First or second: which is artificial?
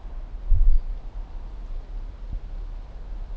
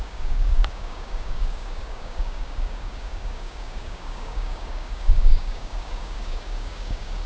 second